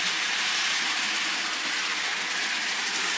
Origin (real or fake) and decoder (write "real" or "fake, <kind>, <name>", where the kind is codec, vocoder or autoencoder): real